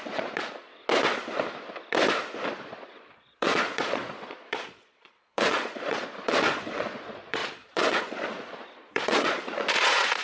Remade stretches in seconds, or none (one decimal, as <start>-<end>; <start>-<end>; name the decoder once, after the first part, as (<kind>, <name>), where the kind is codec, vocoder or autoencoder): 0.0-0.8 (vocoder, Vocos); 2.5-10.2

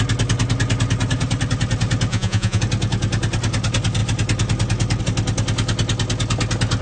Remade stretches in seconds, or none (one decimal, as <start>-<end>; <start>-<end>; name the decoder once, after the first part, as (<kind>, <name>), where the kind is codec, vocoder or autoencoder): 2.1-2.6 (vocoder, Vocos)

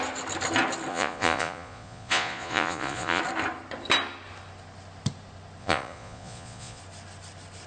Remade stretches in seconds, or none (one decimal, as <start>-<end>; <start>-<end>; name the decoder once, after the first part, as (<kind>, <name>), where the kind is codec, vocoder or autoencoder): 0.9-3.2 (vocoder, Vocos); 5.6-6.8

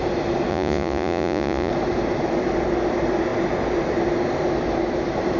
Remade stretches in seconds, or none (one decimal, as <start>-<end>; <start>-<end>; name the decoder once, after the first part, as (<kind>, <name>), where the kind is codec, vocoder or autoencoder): 0.5-1.7 (vocoder, Vocos)